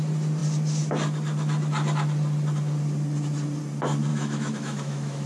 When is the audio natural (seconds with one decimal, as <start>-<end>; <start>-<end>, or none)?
0.0-4.1